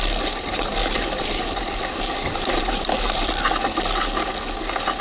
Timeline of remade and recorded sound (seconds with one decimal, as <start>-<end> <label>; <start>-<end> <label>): 0.0-0.8 recorded; 0.8-3.3 remade; 3.3-5.0 recorded